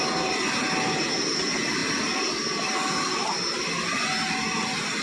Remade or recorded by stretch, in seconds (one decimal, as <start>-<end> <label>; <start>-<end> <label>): 0.0-5.0 recorded